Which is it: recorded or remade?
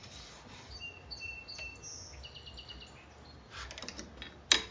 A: recorded